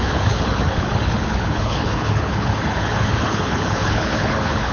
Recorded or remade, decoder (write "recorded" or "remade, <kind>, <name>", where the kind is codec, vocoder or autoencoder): remade, codec, HILCodec